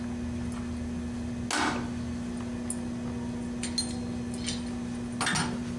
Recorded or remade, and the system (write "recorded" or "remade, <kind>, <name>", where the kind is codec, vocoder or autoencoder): recorded